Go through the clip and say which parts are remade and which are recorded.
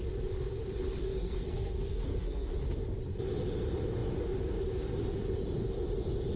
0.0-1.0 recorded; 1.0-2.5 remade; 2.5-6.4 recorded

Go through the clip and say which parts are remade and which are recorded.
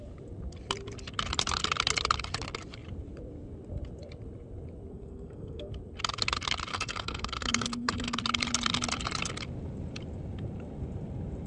0.0-4.9 recorded; 4.9-5.7 remade; 5.7-6.7 recorded; 6.7-8.2 remade; 8.2-11.5 recorded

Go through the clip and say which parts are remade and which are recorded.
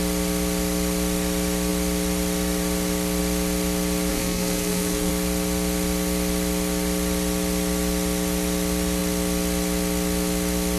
0.0-4.1 recorded; 4.1-5.1 remade; 5.1-10.8 recorded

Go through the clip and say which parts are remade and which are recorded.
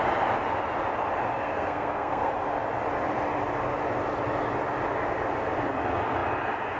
0.0-1.4 recorded; 1.4-2.3 remade; 2.3-6.8 recorded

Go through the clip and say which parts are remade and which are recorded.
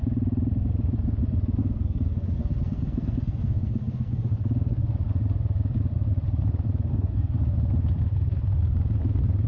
0.0-1.6 recorded; 1.6-4.2 remade; 4.2-6.9 recorded; 6.9-7.4 remade; 7.4-9.5 recorded